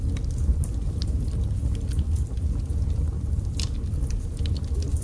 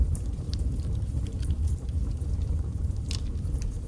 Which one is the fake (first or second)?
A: second